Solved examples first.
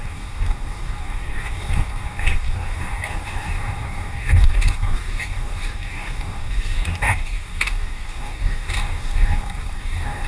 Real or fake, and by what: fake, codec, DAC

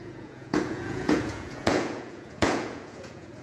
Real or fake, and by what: fake, vocoder, Vocos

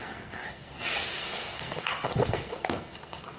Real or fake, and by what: fake, codec, SNAC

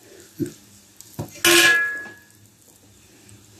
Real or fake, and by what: real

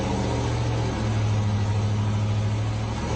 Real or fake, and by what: real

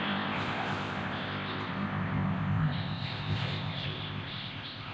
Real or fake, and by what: fake, codec, ZipCodec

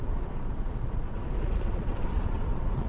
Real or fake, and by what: fake, vocoder, Vocos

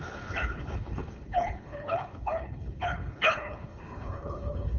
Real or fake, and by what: fake, codec, HILCodec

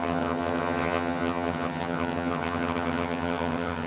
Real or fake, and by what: fake, vocoder, HiFi-GAN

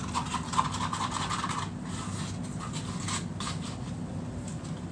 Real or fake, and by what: real